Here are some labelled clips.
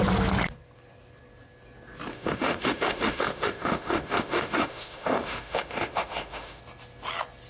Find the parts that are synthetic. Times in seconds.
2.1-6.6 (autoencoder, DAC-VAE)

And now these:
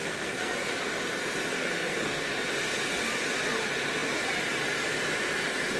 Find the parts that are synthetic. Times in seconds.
0.0-0.7 (codec, SNAC); 1.5-2.3

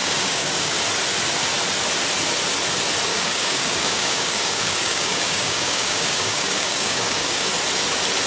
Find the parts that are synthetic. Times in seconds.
0.0-0.8 (codec, DAC); 3.1-7.5

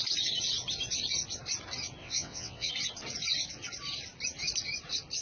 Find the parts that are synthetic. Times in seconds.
2.0-2.7 (vocoder, WaveNeXt)

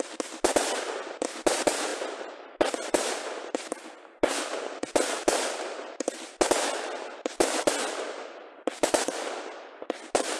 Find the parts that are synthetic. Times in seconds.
none

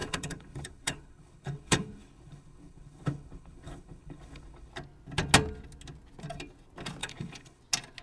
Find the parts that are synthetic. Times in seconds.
0.0-4.7 (codec, HILCodec); 7.0-7.6